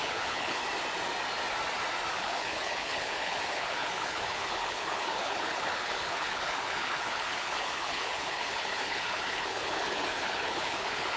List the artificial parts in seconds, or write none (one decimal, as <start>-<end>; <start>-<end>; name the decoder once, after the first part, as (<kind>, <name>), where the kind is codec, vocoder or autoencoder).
0.0-0.6 (codec, HILCodec); 2.1-11.2